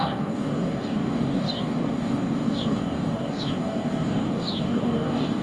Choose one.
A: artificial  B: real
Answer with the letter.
A